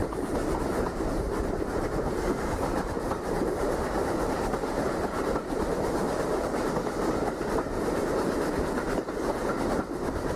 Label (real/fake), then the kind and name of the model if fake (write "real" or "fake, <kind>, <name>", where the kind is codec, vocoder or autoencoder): fake, vocoder, BigVGAN v2